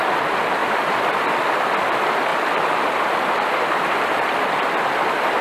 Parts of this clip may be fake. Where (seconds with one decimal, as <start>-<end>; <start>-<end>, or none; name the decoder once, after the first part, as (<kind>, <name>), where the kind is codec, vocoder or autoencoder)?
0.6-1.4 (vocoder, BigVGAN v2); 2.3-4.8